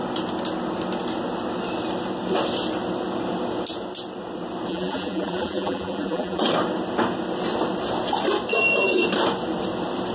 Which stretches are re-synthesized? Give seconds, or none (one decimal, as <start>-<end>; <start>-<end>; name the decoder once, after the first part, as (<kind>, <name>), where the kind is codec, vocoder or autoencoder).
4.7-6.4 (vocoder, BigVGAN v2)